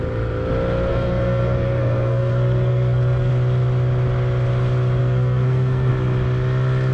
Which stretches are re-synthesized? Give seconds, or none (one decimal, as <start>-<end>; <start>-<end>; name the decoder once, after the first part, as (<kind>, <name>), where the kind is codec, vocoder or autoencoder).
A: 0.9-3.3 (codec, SNAC); 5.0-5.9